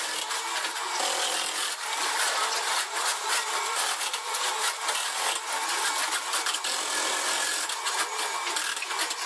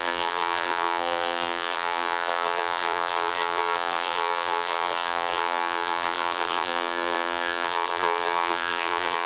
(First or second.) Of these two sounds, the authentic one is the first